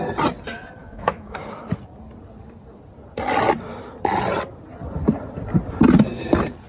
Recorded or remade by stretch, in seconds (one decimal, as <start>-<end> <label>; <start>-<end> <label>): 0.0-0.8 recorded; 0.8-1.4 remade; 1.4-6.7 recorded

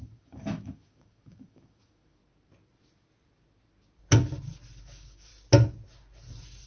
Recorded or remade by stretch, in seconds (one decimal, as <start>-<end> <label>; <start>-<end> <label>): 0.0-2.2 remade; 2.2-4.8 recorded; 4.8-5.3 remade; 5.3-6.7 recorded

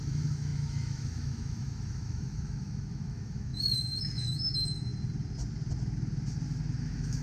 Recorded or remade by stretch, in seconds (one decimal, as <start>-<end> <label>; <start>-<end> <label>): 0.0-4.9 remade; 4.9-6.8 recorded; 6.8-7.2 remade

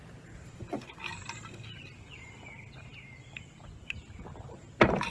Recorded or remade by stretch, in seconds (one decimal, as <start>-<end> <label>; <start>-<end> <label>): 0.0-5.1 recorded